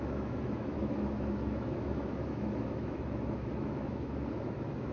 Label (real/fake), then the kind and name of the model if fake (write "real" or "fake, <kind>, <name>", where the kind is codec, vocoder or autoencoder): fake, autoencoder, DAC-VAE